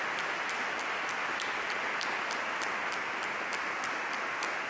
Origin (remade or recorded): recorded